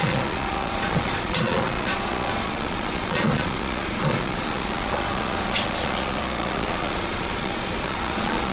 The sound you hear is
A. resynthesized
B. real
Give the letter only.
A